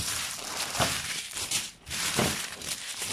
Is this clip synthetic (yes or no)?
yes